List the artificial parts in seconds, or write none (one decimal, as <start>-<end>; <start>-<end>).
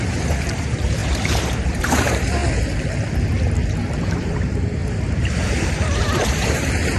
0.0-2.4; 4.0-7.0